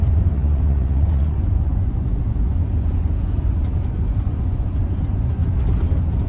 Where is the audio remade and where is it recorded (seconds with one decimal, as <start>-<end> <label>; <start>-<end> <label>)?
0.0-5.4 remade; 5.4-6.3 recorded